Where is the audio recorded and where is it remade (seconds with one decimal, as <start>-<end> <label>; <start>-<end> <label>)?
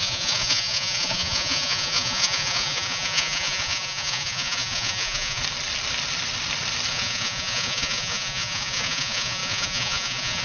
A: 0.0-5.4 remade; 5.4-6.9 recorded; 6.9-10.4 remade